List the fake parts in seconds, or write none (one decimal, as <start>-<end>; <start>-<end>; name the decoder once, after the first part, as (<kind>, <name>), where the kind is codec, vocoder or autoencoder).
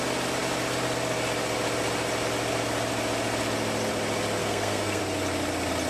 4.4-5.0 (codec, SNAC)